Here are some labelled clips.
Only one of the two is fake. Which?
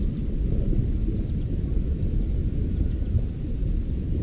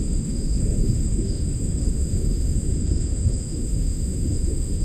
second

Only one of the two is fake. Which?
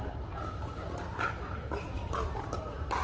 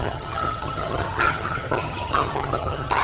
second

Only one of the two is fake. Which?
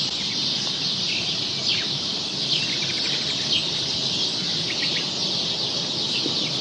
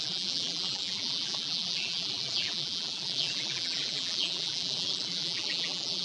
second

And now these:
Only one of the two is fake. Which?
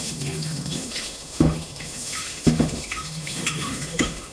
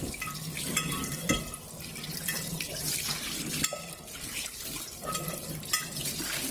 first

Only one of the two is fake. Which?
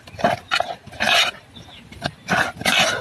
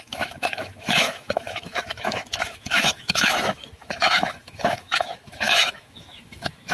second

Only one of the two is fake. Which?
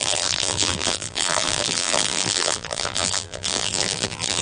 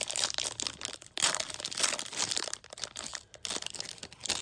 first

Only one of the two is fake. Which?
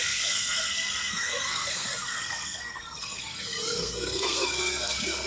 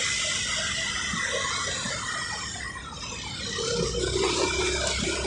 first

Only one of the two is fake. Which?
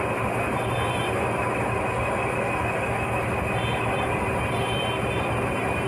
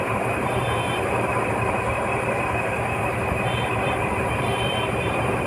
second